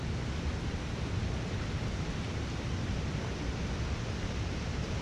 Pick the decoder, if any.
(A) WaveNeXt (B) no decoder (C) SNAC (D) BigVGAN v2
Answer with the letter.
B